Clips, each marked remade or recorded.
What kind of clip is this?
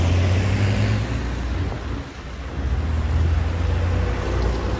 recorded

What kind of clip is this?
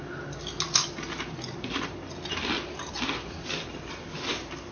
recorded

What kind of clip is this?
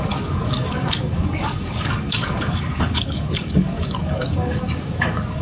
remade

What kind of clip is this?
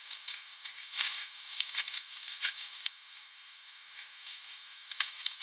remade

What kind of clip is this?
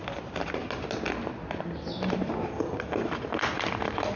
recorded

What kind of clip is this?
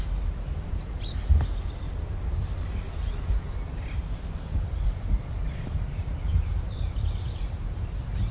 recorded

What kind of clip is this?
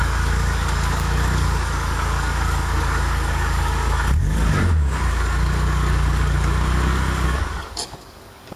remade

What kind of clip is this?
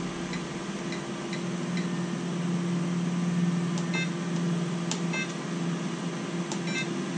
recorded